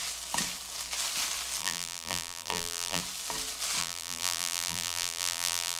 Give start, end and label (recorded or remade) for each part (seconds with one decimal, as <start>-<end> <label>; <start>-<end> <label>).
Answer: 0.0-1.6 recorded; 1.6-3.0 remade; 3.0-3.8 recorded; 3.8-5.8 remade